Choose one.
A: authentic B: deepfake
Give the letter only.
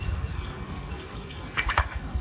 B